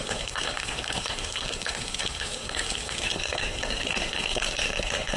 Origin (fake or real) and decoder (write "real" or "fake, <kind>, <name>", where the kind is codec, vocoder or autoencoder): fake, codec, SNAC